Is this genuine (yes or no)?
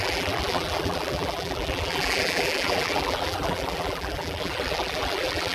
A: no